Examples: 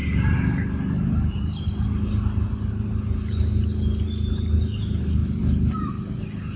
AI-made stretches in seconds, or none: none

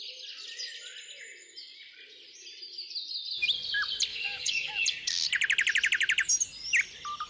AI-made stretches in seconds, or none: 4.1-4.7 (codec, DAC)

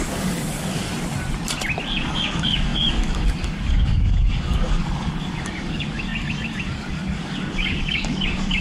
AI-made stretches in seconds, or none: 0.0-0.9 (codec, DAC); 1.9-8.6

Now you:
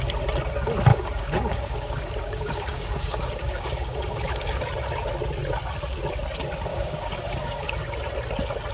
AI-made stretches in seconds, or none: 0.9-4.6 (codec, DAC); 6.7-7.7